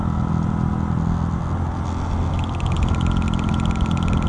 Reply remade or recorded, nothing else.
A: recorded